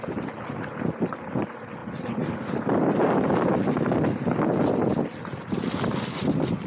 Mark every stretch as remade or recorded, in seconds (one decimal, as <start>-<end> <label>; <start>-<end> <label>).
0.0-6.7 recorded

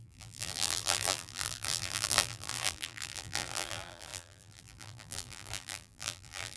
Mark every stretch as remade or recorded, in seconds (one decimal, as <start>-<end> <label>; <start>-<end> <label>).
0.0-6.6 remade

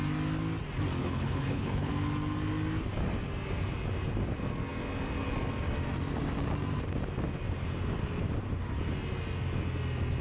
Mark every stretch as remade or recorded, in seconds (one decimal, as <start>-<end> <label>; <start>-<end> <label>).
0.0-1.0 recorded; 1.0-1.9 remade; 1.9-10.2 recorded

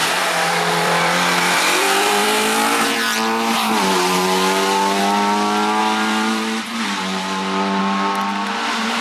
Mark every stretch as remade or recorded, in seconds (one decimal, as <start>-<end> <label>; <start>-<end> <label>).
0.0-5.0 remade; 5.0-5.8 recorded; 5.8-7.8 remade; 7.8-9.0 recorded